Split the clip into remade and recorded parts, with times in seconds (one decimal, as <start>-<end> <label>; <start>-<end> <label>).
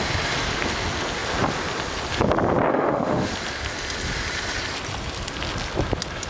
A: 0.0-2.7 recorded; 2.7-3.3 remade; 3.3-6.3 recorded